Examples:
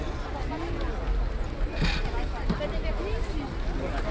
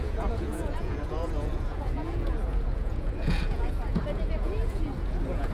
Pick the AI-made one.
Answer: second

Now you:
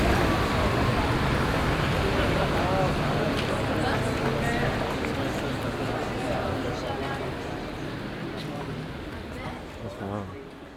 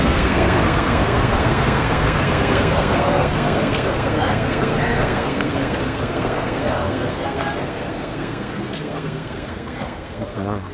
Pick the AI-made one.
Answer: second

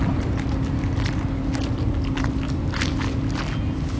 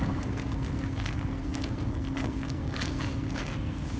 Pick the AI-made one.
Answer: second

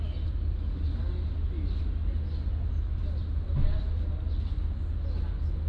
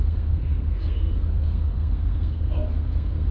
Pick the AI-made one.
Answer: second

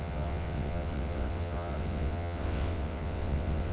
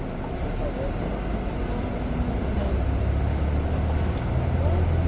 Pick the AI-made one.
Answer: first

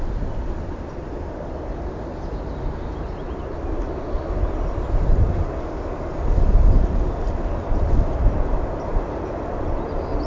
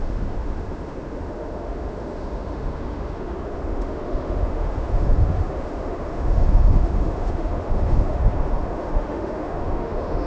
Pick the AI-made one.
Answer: second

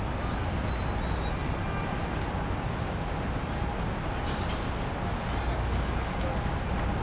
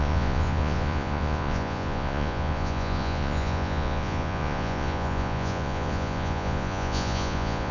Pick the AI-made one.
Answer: second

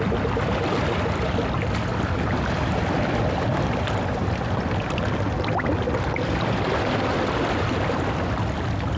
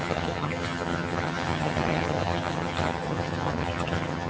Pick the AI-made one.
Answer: second